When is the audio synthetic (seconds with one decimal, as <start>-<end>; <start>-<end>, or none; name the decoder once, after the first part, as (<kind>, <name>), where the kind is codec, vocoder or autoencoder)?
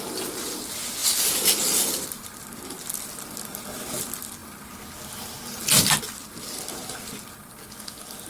none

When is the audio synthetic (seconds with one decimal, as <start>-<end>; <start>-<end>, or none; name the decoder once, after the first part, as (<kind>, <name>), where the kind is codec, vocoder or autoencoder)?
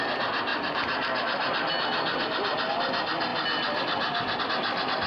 none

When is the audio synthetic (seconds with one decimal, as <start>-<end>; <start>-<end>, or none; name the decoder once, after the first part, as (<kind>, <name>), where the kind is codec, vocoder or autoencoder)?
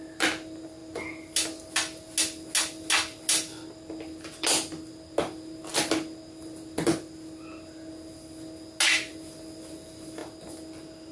none